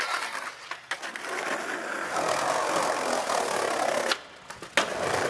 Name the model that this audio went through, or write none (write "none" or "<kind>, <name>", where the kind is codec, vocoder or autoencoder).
none